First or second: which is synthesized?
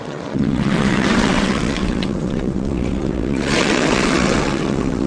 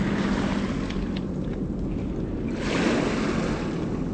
first